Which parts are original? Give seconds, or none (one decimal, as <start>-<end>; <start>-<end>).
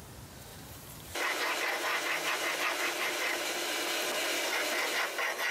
0.0-0.5; 2.5-3.0; 3.5-5.5